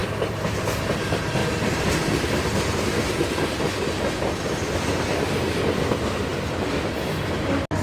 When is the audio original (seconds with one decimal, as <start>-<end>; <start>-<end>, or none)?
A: 0.0-7.8